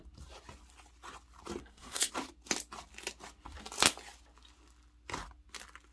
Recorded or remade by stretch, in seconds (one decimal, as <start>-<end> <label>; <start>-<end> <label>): 0.0-1.6 recorded; 1.6-2.1 remade; 2.1-5.9 recorded